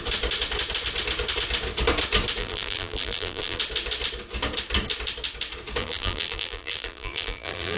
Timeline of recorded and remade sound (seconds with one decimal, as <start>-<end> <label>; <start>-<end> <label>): 0.0-2.4 recorded; 2.4-3.6 remade; 3.6-5.8 recorded; 5.8-7.8 remade